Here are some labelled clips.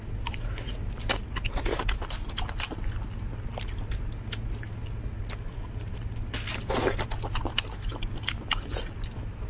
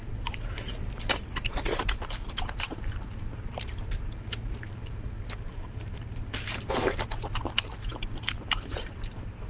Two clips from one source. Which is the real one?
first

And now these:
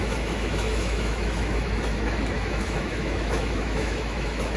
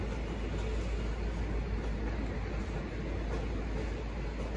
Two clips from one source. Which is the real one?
second